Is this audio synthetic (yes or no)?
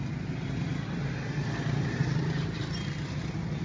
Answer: no